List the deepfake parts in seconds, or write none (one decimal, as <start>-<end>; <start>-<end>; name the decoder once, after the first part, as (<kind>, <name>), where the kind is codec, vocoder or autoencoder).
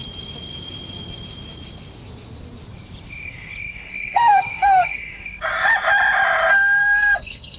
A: 3.9-5.0 (codec, SNAC); 6.5-7.6